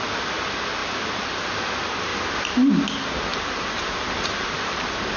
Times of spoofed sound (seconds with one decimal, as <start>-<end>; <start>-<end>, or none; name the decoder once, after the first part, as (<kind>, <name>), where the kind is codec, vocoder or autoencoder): 0.8-1.5 (vocoder, BigVGAN v2); 3.3-5.2